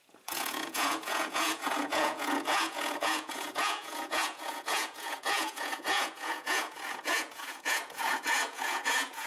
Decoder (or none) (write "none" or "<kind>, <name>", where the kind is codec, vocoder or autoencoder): vocoder, Vocos